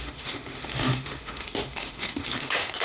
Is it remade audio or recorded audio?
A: remade